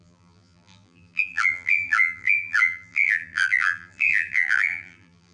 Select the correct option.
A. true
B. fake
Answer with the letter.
B